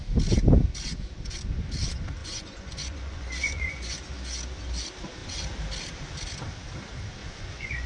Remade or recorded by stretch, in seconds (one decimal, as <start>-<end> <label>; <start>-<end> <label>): 0.0-2.2 recorded; 2.2-4.0 remade; 4.0-7.2 recorded; 7.2-7.9 remade